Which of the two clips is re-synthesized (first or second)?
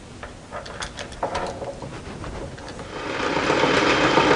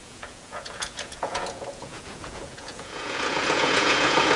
second